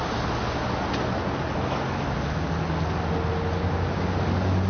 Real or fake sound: real